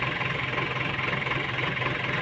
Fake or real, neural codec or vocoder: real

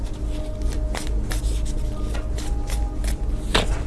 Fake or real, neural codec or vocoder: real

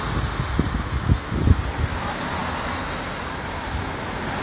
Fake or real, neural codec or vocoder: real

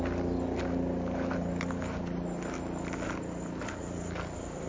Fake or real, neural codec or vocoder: real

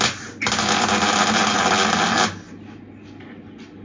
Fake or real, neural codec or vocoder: real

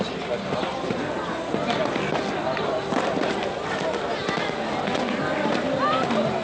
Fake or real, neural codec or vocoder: real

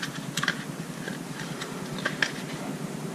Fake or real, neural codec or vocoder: real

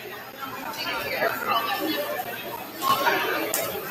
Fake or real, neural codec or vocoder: real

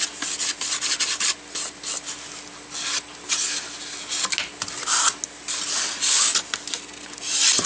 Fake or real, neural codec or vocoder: real